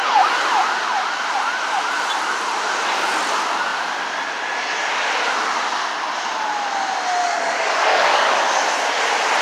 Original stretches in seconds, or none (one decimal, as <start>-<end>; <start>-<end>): 0.0-7.2; 8.4-9.4